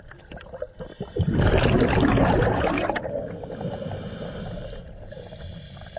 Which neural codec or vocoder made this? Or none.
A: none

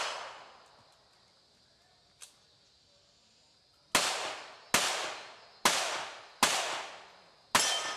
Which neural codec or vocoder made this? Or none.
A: none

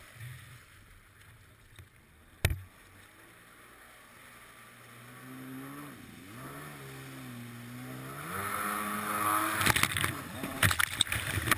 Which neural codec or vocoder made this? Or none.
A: none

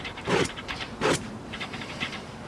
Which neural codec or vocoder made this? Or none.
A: vocoder, BigVGAN v2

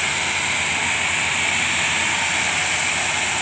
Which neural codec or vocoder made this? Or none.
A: none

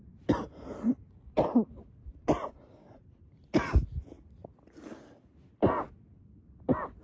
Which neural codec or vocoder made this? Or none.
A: none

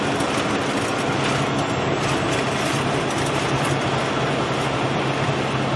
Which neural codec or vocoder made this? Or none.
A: none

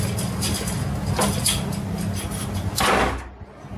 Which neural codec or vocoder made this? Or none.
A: none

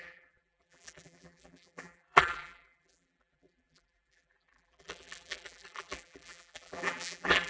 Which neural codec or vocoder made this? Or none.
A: vocoder, BigVGAN v2